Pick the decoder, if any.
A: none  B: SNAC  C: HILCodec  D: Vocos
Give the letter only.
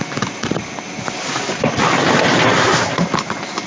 A